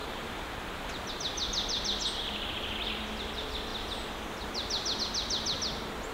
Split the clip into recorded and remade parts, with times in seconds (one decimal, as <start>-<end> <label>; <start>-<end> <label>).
0.0-1.1 remade; 1.1-6.1 recorded